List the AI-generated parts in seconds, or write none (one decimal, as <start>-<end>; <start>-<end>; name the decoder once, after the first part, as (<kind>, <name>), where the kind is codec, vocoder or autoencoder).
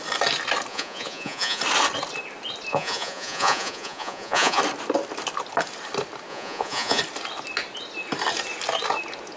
0.7-1.6 (vocoder, Vocos); 2.7-4.6; 6.3-7.0